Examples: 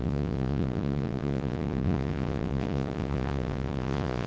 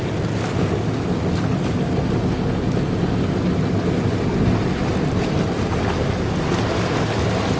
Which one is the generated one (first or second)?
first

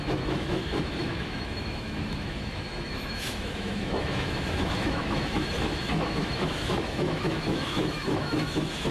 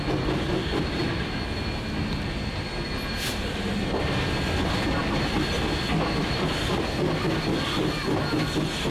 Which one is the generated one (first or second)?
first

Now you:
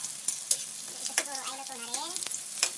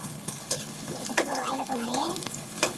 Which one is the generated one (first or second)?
second